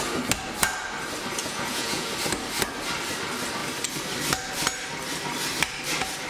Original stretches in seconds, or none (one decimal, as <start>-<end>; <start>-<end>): 0.0-1.4; 2.1-6.3